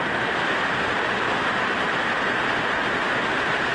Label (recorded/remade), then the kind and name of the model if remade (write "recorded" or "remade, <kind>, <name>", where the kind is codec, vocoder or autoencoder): recorded